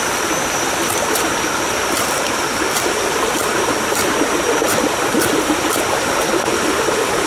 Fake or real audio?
fake